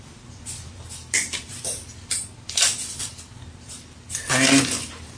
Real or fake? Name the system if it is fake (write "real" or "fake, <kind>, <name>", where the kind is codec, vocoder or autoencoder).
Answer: real